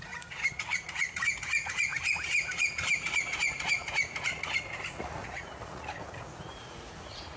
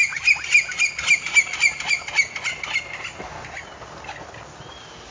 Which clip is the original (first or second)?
second